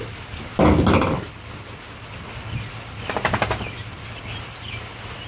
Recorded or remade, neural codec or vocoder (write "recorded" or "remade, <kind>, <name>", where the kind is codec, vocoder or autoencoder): recorded